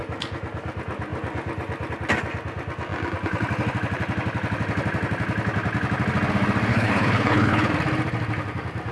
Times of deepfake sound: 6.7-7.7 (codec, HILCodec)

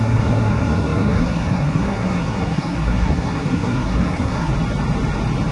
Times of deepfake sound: 0.0-4.5 (codec, SNAC)